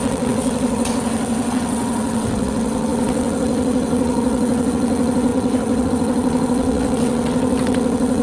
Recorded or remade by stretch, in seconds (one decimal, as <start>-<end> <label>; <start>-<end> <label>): 0.0-8.2 remade